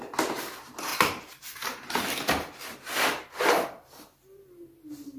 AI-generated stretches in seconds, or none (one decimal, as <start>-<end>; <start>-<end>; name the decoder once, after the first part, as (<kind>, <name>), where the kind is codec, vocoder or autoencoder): 0.9-4.0 (vocoder, BigVGAN v2)

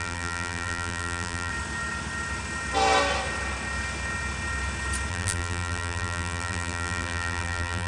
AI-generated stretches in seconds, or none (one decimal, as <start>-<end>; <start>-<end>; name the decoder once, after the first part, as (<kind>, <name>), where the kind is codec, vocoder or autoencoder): 0.0-1.5 (vocoder, BigVGAN v2); 5.1-7.9

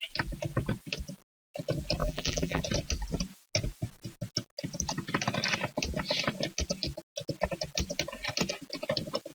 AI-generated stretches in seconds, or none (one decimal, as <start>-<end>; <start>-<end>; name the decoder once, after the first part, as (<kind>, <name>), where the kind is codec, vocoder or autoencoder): 2.0-2.6 (vocoder, BigVGAN v2)

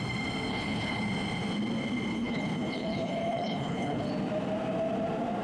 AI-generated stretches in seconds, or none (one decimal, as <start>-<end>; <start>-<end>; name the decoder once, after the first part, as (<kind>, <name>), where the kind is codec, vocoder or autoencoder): 0.5-1.0 (codec, HILCodec); 2.1-4.1

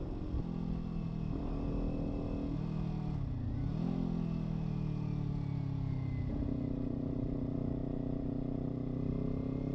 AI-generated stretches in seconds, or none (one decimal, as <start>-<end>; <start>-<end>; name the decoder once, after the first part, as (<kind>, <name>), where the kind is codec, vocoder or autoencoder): none

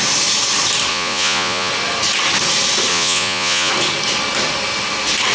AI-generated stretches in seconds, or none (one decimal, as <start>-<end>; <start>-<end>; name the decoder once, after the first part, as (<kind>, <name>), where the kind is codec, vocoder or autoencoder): 0.9-1.7 (vocoder, Vocos); 2.9-3.7

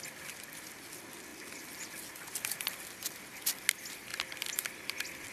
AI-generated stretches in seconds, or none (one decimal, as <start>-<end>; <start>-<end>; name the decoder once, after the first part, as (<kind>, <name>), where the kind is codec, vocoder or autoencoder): none